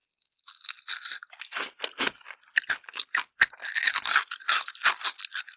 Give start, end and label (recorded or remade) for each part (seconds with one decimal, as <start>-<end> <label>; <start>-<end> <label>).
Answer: 0.0-5.6 recorded